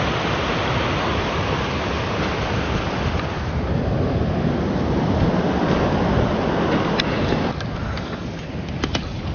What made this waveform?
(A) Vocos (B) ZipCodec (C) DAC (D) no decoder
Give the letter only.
D